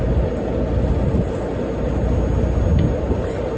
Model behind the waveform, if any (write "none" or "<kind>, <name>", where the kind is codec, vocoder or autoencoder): none